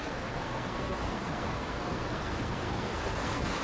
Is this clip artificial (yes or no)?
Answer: yes